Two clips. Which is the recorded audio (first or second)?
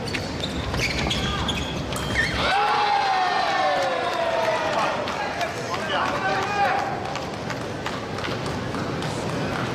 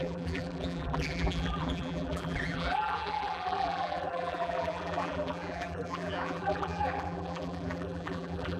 first